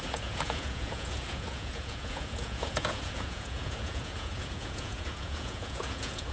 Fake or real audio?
fake